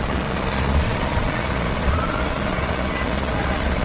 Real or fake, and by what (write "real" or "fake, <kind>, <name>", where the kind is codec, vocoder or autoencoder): fake, vocoder, Vocos